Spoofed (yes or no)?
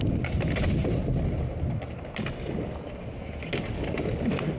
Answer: no